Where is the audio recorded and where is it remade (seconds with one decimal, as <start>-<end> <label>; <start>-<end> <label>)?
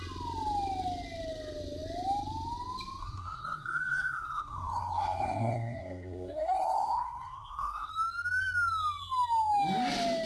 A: 0.0-3.0 recorded; 3.0-7.9 remade; 7.9-10.3 recorded